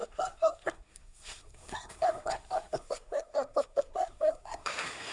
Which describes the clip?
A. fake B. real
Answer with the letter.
A